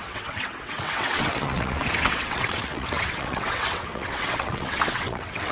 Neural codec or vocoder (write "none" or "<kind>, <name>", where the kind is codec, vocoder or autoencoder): vocoder, WaveNeXt